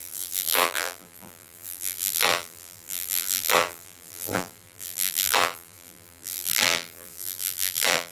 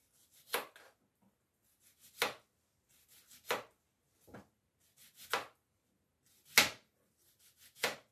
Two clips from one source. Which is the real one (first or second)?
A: second